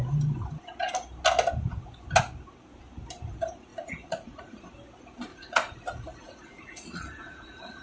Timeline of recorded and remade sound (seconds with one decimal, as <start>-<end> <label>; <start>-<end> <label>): 0.0-3.7 recorded; 3.7-4.7 remade; 4.7-5.3 recorded; 5.3-7.8 remade